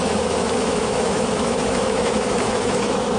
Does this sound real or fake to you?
fake